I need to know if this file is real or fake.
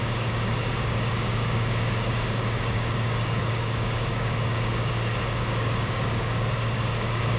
fake